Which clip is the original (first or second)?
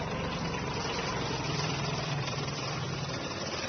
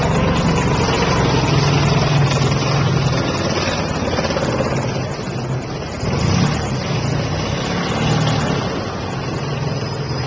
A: second